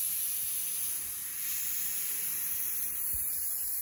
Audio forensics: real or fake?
real